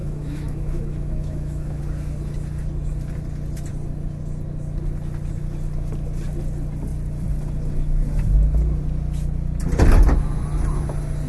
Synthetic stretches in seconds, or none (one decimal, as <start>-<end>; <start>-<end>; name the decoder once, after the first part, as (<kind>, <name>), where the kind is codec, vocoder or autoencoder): 0.0-1.8 (autoencoder, DAC-VAE)